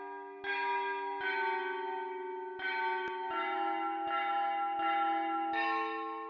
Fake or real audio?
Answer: real